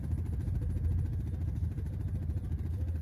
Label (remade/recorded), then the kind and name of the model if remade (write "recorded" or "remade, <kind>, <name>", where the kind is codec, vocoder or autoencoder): recorded